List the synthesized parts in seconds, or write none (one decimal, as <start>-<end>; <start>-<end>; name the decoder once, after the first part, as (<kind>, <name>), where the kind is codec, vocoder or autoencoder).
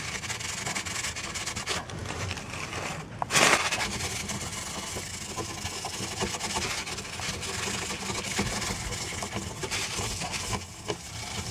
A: 2.0-2.9 (vocoder, BigVGAN v2); 9.6-10.4